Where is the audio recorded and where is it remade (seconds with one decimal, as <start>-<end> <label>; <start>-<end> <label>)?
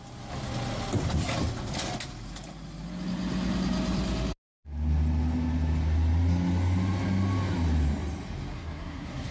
0.0-8.5 recorded; 8.5-9.3 remade